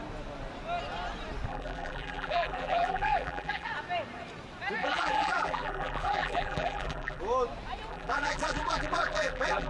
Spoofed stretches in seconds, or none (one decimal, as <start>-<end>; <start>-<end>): 1.5-3.7; 4.8-7.2; 7.9-9.7